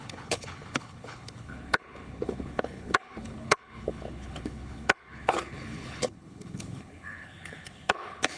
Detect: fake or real fake